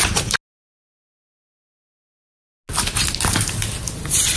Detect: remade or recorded recorded